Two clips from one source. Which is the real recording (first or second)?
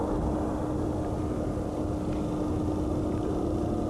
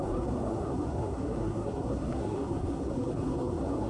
first